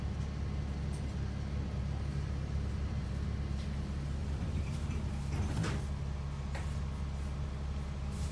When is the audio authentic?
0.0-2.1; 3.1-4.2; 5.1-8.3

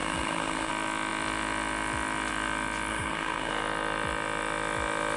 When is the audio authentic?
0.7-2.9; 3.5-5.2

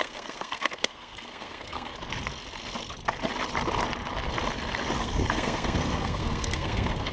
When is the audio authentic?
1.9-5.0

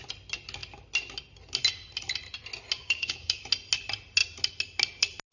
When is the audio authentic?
0.0-2.8; 3.4-5.3